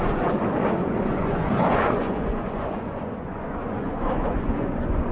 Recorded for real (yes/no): no